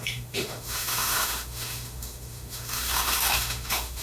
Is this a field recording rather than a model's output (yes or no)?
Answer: no